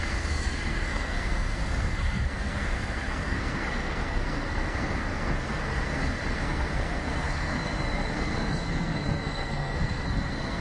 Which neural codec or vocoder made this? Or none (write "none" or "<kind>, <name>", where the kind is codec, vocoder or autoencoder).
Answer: codec, SNAC